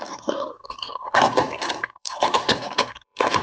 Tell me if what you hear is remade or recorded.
remade